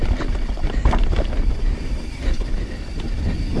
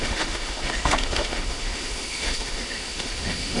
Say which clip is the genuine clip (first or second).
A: first